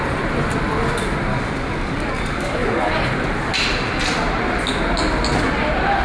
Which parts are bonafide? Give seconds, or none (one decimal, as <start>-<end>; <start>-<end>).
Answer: 0.0-1.3; 3.0-6.0